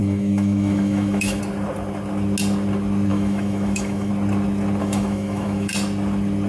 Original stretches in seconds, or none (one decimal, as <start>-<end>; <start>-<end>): 1.4-3.1; 4.1-4.8; 5.7-6.5